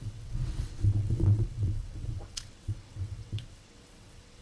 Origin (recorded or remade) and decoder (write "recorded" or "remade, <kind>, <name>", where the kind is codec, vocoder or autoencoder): remade, vocoder, WaveNeXt